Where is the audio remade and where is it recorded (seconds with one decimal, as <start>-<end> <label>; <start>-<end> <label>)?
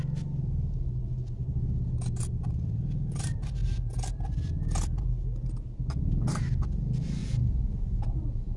0.0-7.2 recorded; 7.2-8.6 remade